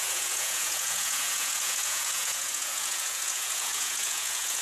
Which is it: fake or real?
fake